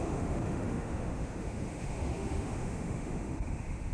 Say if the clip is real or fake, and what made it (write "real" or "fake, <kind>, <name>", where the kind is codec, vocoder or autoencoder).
fake, autoencoder, DAC-VAE